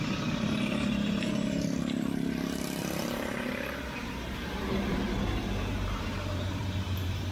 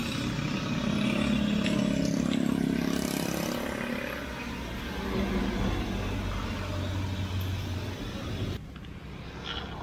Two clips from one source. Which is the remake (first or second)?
first